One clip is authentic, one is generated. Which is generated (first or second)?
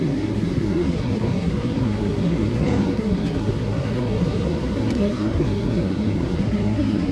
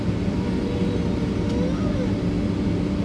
first